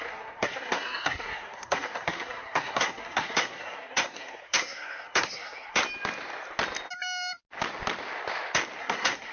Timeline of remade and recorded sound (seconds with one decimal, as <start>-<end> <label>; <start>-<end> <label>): 0.0-5.8 remade; 5.8-8.8 recorded; 8.8-9.3 remade